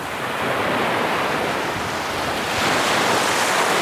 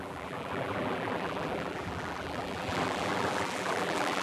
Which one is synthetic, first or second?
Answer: second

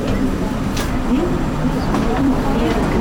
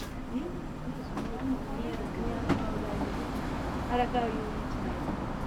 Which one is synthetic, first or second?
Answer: first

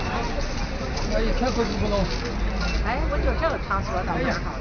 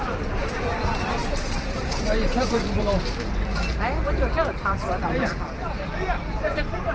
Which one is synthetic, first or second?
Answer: second